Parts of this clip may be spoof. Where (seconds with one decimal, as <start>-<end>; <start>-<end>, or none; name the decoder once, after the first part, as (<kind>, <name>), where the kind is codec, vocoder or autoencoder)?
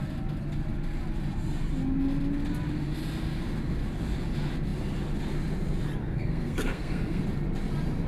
6.0-7.2 (codec, SNAC)